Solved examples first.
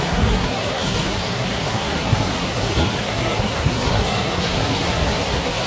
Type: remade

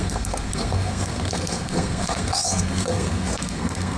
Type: remade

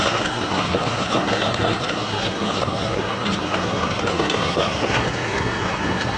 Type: remade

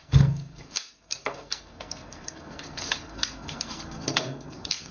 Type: remade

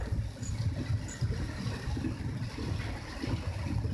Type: recorded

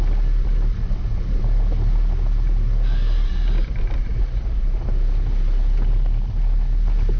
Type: recorded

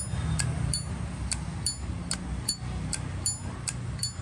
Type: recorded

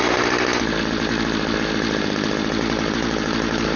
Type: recorded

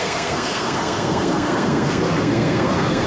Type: remade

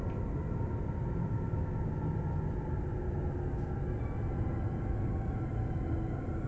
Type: recorded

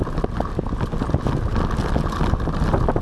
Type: recorded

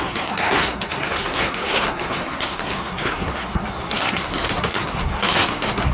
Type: remade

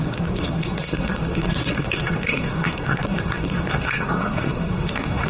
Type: remade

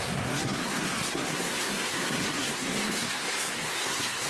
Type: remade